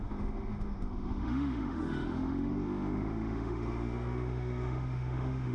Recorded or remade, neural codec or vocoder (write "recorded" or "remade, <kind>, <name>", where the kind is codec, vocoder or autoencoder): remade, autoencoder, DAC-VAE